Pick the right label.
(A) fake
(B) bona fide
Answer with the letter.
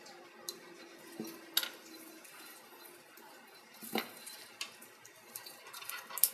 B